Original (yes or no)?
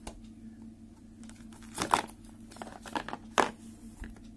yes